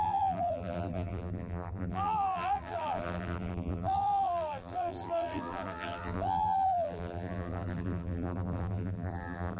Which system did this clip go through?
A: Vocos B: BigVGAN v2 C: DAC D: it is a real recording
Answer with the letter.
B